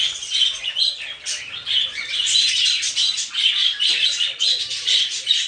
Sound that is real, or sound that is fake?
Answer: real